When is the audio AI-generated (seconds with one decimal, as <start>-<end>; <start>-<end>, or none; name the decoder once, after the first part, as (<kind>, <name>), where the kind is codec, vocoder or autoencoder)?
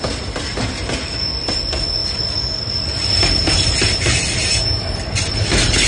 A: none